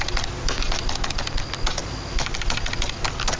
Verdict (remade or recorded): recorded